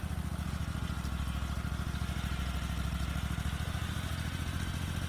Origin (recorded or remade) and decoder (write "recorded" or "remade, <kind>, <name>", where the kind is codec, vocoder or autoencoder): recorded